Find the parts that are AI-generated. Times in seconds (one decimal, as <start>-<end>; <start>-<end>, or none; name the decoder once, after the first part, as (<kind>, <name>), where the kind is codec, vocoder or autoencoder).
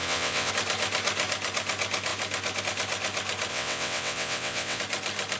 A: 0.0-0.5 (vocoder, WaveNeXt); 3.5-4.8